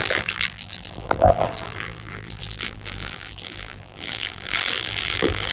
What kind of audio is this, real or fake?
fake